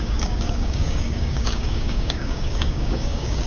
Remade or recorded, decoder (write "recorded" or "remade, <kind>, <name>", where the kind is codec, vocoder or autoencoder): remade, codec, DAC